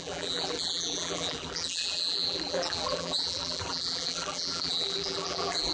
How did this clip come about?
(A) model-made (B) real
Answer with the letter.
A